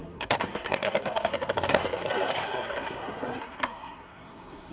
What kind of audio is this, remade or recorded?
remade